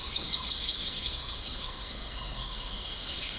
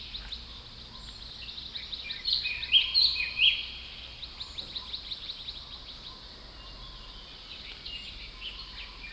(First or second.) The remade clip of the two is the first